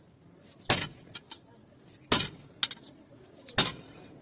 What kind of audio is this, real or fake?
real